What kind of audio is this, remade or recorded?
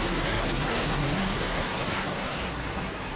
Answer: remade